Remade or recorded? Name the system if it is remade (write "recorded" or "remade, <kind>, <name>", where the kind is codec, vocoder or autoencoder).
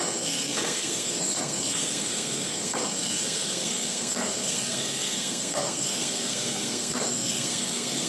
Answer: remade, codec, SNAC